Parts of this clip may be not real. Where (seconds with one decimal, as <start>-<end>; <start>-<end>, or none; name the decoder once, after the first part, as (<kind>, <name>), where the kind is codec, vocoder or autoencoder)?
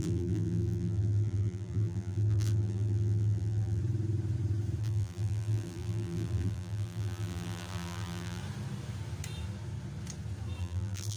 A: 0.0-3.8 (vocoder, BigVGAN v2); 4.8-8.4; 10.6-11.2